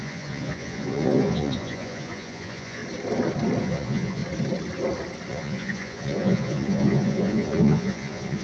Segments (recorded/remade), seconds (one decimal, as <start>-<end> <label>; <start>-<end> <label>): 0.0-2.8 remade; 2.8-3.6 recorded; 3.6-4.2 remade; 4.2-5.3 recorded; 5.3-8.4 remade